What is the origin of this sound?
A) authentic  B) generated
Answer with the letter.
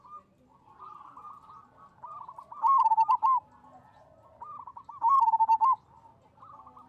A